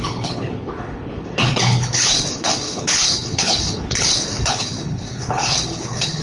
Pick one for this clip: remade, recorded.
remade